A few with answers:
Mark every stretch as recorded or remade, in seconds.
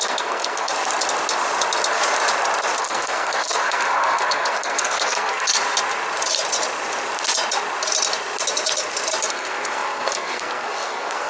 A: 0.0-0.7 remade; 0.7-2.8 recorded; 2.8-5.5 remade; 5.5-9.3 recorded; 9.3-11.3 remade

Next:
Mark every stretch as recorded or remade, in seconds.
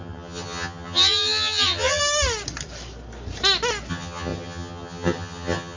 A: 0.0-2.0 remade; 2.0-3.9 recorded; 3.9-5.8 remade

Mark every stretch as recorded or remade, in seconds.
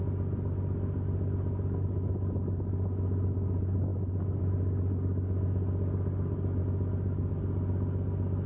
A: 0.0-8.5 recorded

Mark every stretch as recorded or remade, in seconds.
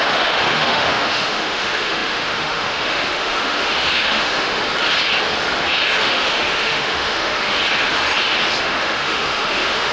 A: 0.0-4.6 remade; 4.6-6.0 recorded; 6.0-7.6 remade; 7.6-8.6 recorded; 8.6-9.9 remade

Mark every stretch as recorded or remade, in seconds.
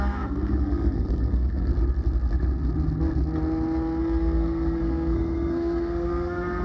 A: 0.0-1.7 remade; 1.7-4.0 recorded; 4.0-6.6 remade